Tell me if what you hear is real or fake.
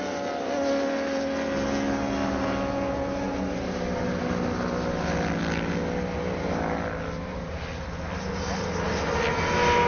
real